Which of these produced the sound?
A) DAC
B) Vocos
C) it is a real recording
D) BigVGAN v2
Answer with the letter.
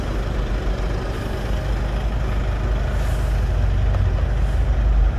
C